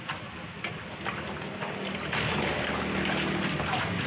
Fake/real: real